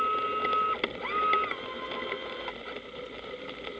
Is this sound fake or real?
real